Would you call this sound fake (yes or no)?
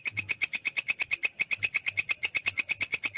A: no